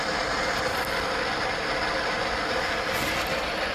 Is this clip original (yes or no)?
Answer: yes